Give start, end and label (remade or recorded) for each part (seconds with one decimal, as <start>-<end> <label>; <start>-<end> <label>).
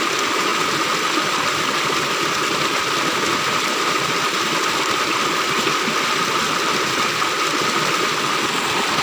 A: 0.0-0.5 remade; 0.5-3.4 recorded; 3.4-9.0 remade